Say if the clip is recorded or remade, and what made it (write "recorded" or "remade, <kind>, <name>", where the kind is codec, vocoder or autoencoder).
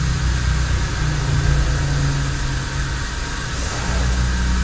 recorded